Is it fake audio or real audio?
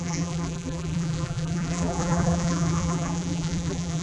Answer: fake